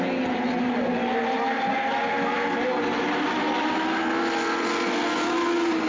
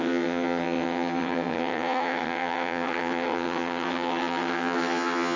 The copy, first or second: second